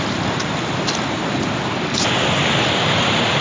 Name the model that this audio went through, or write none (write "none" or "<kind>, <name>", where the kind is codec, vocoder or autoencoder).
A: none